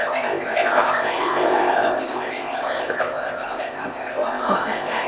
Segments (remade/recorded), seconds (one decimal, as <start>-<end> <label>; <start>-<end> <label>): 0.0-5.1 remade

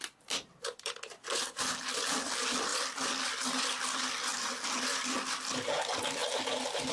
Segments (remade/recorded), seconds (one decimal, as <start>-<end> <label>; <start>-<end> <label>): 0.0-6.9 remade

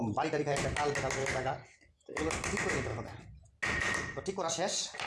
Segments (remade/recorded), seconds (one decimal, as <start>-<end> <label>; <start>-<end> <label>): 0.0-1.2 recorded; 1.2-2.2 remade; 2.2-5.1 recorded

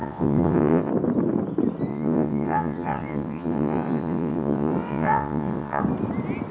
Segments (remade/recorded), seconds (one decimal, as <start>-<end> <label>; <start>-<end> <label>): 0.0-0.9 remade; 0.9-1.9 recorded; 1.9-5.8 remade; 5.8-6.5 recorded

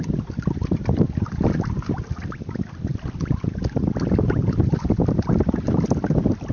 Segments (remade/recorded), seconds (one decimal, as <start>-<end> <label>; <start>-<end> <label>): 0.0-6.5 recorded

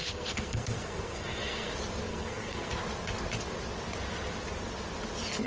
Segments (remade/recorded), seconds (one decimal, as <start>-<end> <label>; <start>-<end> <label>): 0.0-1.7 remade; 1.7-2.1 recorded; 2.1-2.7 remade; 2.7-5.5 recorded

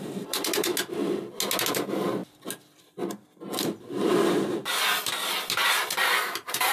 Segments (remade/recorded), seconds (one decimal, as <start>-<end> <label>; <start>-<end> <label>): 0.0-0.7 remade; 0.7-1.7 recorded; 1.7-2.2 remade; 2.2-6.2 recorded; 6.2-6.7 remade

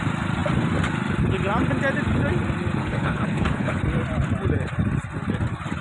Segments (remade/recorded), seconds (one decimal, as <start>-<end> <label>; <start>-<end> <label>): 0.0-2.8 recorded; 2.8-3.8 remade; 3.8-5.8 recorded